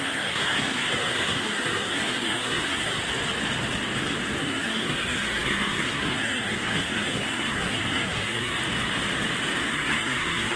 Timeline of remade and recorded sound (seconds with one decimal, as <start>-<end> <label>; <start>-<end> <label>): 0.0-3.0 remade; 3.0-4.4 recorded; 4.4-8.6 remade; 8.6-9.7 recorded; 9.7-10.6 remade